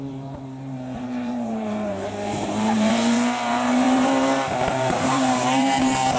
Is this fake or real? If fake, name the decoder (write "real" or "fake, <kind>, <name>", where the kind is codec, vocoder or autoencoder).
fake, vocoder, BigVGAN v2